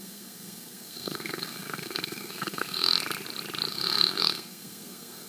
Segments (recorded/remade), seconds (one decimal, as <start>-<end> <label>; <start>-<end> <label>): 0.0-2.9 remade; 2.9-3.7 recorded; 3.7-5.3 remade